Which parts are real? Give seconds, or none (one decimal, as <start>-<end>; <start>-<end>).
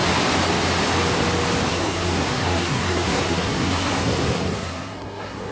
0.0-1.7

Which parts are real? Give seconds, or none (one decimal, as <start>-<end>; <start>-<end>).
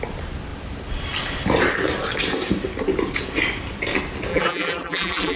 0.0-4.3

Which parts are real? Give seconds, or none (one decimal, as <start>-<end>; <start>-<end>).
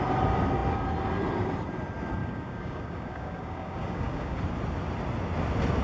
0.0-2.2; 4.4-5.8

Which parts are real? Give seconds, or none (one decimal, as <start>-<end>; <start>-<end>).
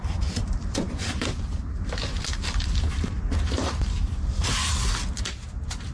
4.6-5.2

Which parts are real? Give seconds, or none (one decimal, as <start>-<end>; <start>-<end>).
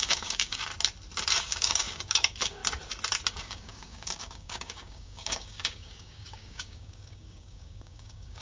0.7-1.4; 2.6-3.3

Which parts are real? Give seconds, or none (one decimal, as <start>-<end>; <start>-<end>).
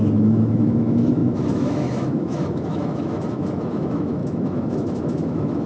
none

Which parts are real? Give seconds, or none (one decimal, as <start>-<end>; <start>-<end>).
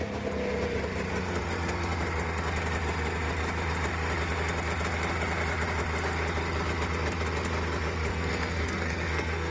0.0-8.1